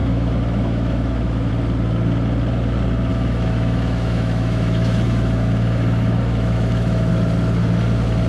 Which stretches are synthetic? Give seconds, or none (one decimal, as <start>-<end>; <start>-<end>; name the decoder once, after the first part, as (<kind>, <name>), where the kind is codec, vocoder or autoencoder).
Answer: 0.0-1.5 (autoencoder, DAC-VAE); 3.1-7.1